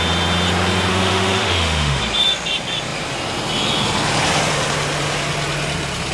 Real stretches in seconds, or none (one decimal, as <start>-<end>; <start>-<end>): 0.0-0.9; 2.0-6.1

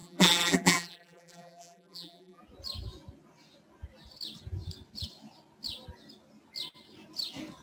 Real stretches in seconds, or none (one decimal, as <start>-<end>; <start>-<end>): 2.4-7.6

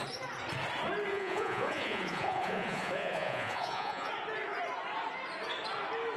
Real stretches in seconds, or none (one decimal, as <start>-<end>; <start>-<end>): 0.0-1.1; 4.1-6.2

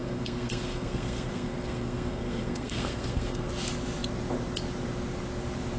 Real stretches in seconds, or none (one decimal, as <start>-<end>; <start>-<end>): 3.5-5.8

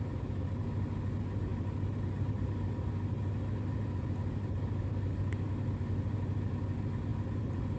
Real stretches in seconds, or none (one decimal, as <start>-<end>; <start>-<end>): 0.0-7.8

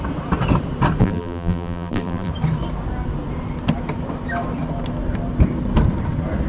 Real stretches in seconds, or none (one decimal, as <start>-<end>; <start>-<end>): 0.0-1.0; 2.3-6.5

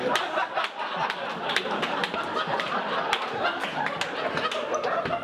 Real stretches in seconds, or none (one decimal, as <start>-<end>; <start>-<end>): 0.0-1.3; 2.1-5.2